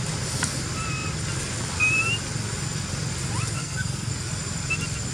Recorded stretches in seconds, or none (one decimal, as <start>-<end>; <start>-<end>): 0.0-3.6; 4.1-5.1